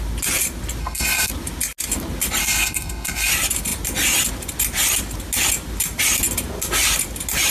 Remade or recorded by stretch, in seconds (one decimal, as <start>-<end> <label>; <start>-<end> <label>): 0.0-0.8 recorded; 0.8-1.3 remade; 1.3-2.4 recorded; 2.4-3.3 remade; 3.3-7.5 recorded